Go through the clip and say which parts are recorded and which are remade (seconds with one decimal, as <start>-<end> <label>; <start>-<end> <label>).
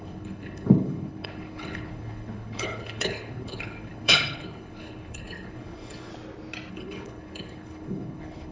0.0-6.1 remade; 6.1-6.7 recorded; 6.7-8.5 remade